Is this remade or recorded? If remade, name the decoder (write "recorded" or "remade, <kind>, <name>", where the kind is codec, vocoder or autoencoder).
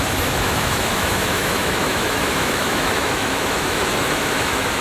remade, autoencoder, DAC-VAE